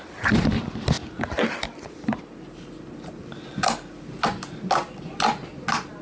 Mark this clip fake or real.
real